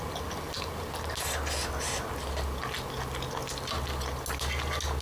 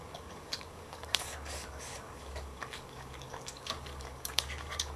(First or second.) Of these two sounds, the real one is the first